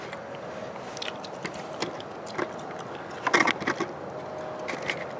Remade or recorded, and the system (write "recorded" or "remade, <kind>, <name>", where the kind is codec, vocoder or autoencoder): recorded